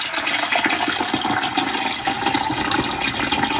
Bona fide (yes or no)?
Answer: yes